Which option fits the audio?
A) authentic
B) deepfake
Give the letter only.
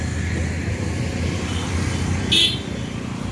A